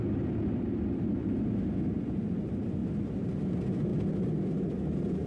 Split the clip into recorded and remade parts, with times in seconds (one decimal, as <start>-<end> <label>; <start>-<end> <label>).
0.0-5.3 recorded